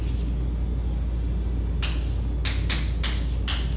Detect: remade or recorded recorded